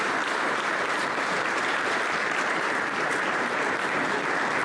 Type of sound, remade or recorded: remade